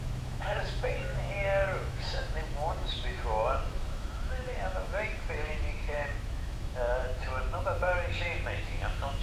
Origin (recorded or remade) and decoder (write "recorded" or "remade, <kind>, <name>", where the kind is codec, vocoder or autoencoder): remade, autoencoder, DAC-VAE